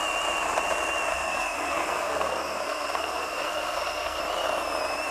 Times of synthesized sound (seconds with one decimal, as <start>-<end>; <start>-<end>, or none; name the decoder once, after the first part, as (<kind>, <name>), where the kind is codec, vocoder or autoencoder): 1.1-4.2 (codec, SNAC)